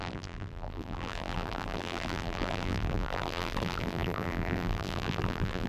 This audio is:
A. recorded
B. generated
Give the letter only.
B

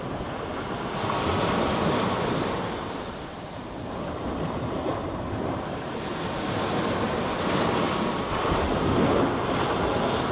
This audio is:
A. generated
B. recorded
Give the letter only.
B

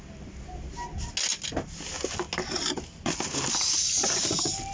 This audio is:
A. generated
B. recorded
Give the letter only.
B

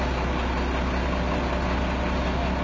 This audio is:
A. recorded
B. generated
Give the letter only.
A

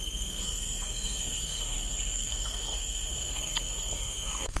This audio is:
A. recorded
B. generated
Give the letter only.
B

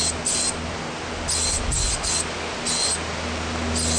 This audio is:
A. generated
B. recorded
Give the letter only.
B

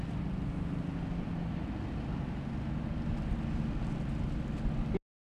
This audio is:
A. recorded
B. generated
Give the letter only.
A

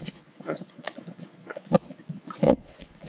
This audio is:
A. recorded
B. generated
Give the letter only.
B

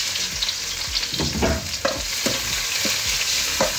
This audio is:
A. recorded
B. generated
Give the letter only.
A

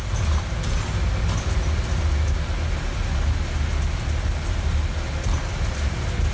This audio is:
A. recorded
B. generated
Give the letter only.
A